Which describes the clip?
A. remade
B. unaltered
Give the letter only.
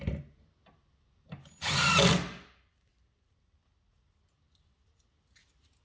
B